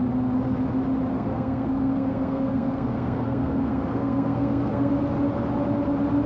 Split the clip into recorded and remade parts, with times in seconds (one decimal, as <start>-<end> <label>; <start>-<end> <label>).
0.0-1.1 recorded; 1.1-4.9 remade; 4.9-6.3 recorded